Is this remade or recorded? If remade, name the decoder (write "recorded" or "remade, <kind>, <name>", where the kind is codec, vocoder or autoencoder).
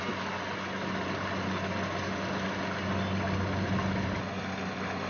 recorded